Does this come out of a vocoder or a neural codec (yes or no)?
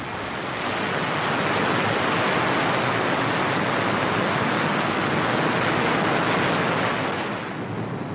no